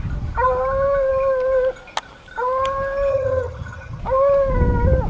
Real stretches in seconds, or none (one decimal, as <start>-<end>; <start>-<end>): 0.0-3.1; 4.0-5.1